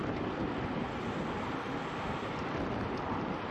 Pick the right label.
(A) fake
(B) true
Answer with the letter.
B